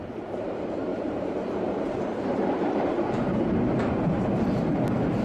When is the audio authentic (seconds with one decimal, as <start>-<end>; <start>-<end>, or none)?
none

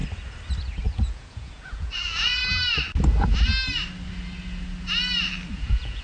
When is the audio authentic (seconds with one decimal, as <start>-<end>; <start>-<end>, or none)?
0.0-0.6; 2.4-5.5

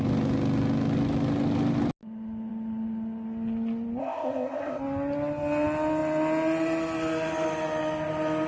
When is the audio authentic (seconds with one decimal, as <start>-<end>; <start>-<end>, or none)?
0.0-4.0; 4.8-8.5

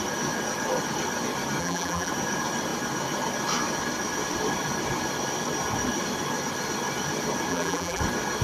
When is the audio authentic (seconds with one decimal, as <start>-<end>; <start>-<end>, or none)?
0.0-1.6; 2.1-7.5; 8.0-8.4

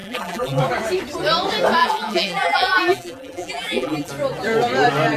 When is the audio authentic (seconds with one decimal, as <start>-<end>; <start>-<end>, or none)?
0.6-1.8; 4.1-5.2

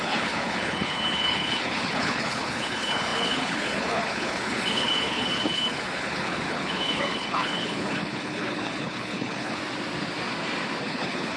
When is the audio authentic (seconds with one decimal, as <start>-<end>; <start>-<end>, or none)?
9.6-10.8

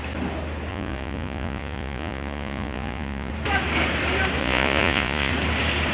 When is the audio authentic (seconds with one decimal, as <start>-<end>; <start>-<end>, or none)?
0.0-0.7; 3.3-4.4; 5.3-5.9